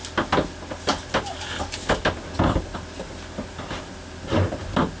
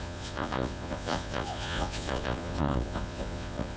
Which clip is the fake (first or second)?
second